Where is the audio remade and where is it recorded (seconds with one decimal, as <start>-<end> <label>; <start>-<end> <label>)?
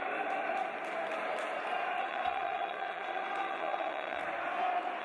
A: 0.0-2.0 recorded; 2.0-4.2 remade; 4.2-5.0 recorded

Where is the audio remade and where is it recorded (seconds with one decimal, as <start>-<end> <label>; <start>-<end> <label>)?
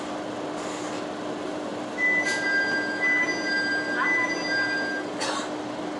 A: 0.0-6.0 recorded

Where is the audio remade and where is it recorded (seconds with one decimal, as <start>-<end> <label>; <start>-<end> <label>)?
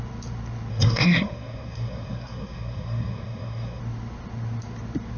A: 0.0-0.7 recorded; 0.7-3.8 remade; 3.8-5.2 recorded